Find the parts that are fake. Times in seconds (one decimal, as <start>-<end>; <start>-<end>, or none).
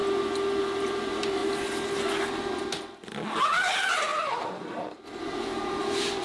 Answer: 0.6-1.4; 3.4-6.2